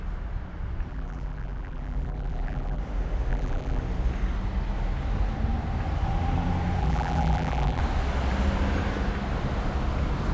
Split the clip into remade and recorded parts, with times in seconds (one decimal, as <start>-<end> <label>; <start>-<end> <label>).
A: 0.0-0.9 recorded; 0.9-2.8 remade; 2.8-3.3 recorded; 3.3-3.8 remade; 3.8-6.8 recorded; 6.8-7.8 remade; 7.8-10.3 recorded